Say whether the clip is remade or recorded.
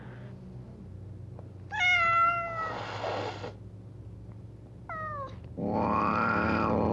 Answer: recorded